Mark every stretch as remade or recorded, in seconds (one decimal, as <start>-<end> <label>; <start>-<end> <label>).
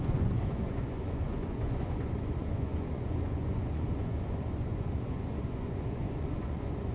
0.0-6.9 remade